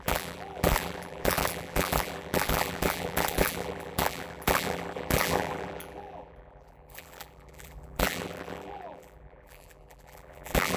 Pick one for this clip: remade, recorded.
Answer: remade